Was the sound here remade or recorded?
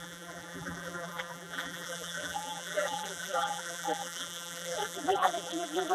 remade